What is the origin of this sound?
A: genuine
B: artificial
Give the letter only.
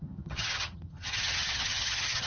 B